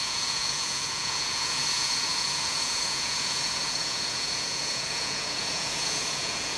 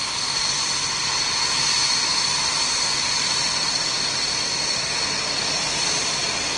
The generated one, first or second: first